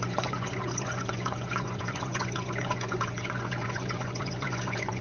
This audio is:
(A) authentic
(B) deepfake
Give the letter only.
B